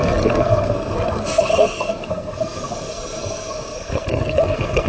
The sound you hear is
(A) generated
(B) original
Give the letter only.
A